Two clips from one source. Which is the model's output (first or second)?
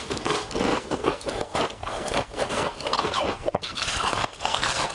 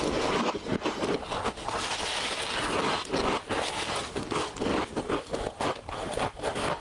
first